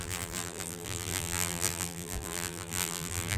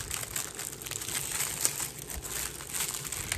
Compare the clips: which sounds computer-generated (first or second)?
first